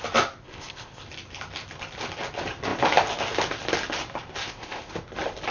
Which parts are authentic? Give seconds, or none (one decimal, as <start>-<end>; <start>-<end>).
0.0-0.4; 1.0-4.4; 4.9-5.5